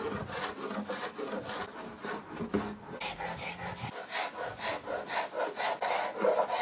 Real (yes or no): yes